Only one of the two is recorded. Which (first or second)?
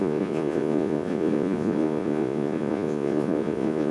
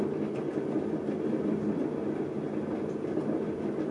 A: second